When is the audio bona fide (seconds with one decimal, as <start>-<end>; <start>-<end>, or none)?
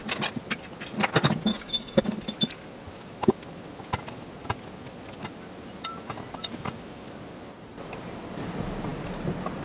0.0-1.5; 2.0-9.6